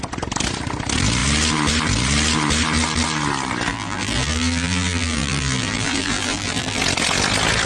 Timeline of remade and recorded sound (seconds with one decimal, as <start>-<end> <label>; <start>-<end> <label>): 0.0-3.7 recorded; 3.7-6.8 remade; 6.8-7.7 recorded